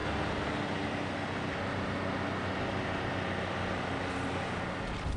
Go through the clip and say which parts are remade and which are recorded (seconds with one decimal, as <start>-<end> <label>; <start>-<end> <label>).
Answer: 0.0-5.2 recorded